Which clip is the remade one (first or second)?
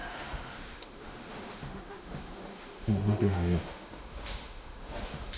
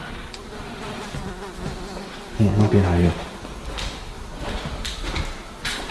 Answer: first